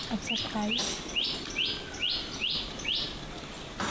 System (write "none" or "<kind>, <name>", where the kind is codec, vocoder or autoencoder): none